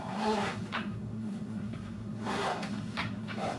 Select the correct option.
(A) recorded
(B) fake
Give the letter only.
B